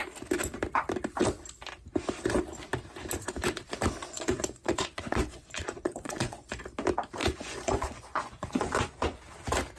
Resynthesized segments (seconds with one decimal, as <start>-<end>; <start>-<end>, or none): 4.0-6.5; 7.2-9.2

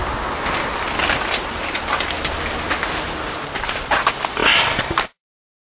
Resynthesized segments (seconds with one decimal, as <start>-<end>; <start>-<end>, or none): none

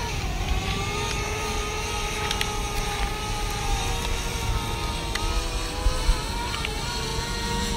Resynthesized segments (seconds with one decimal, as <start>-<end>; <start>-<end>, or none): 7.1-7.8